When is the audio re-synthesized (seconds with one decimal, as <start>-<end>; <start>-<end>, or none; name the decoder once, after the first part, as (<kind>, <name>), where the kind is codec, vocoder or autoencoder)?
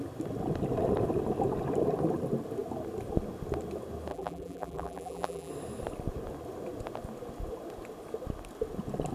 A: 4.1-5.5 (vocoder, BigVGAN v2)